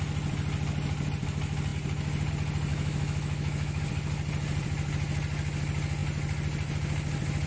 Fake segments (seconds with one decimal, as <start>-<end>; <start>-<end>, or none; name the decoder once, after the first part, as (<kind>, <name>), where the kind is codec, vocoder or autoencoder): 2.7-3.8 (autoencoder, DAC-VAE)